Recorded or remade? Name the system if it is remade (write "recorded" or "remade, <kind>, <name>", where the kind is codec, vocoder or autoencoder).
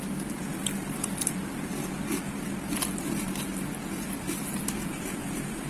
recorded